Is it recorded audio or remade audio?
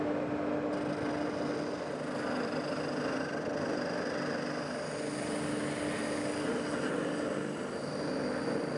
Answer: recorded